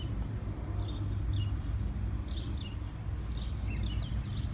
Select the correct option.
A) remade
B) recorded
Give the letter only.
B